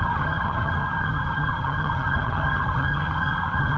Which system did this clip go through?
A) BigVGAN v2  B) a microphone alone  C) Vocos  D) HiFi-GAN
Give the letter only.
D